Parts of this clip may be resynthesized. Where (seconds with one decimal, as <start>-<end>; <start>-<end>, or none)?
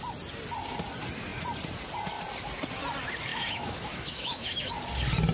3.3-4.7